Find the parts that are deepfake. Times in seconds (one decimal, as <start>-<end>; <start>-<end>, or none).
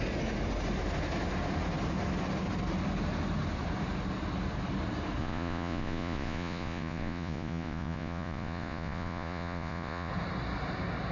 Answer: 5.2-10.1